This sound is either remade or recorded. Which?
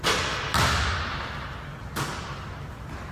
recorded